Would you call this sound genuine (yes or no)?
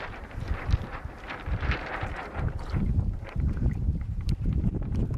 no